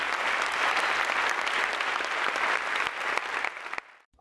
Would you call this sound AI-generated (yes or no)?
no